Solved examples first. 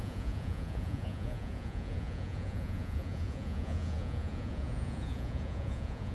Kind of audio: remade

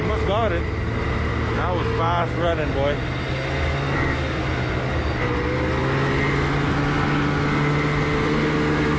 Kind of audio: recorded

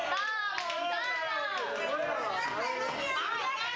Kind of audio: recorded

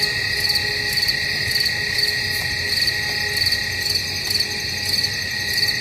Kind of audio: recorded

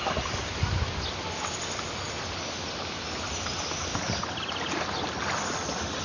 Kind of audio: recorded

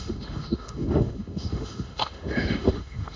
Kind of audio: remade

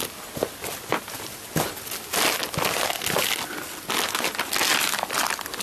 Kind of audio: recorded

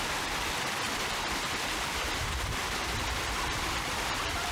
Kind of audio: remade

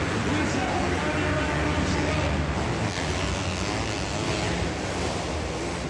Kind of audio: recorded